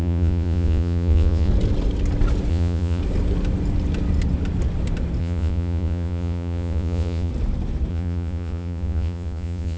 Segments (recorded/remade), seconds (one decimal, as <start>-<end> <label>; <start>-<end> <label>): 0.0-1.5 remade; 1.5-2.5 recorded; 2.5-3.0 remade; 3.0-5.2 recorded; 5.2-7.3 remade; 7.3-7.9 recorded; 7.9-9.8 remade